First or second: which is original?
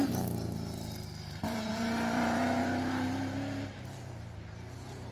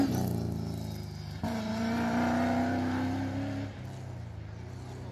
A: second